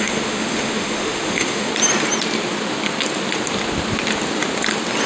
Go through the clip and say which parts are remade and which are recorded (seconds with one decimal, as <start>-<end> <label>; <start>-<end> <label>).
0.0-1.7 remade; 1.7-5.1 recorded